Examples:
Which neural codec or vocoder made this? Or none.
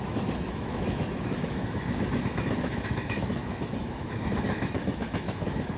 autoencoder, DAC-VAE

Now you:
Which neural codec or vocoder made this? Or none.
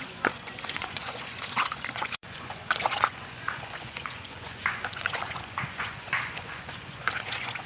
vocoder, Vocos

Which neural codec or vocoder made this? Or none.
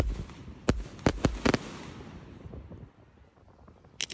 none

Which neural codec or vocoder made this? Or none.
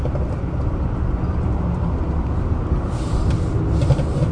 none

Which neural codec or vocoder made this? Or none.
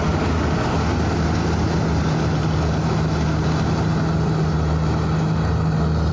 none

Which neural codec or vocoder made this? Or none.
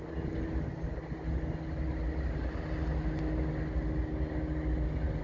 none